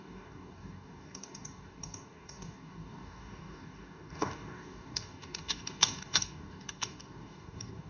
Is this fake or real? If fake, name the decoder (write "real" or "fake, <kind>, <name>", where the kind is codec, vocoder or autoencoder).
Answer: fake, codec, DAC